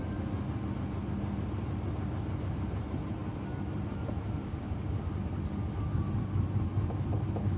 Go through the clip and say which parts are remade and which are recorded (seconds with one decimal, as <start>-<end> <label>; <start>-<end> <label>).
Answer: 0.0-4.4 recorded; 4.4-5.0 remade; 5.0-7.6 recorded